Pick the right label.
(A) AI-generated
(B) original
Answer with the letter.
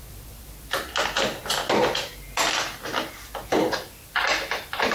A